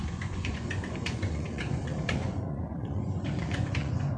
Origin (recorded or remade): remade